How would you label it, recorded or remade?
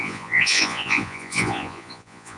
remade